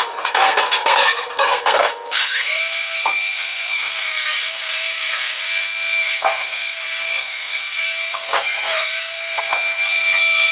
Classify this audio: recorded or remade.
remade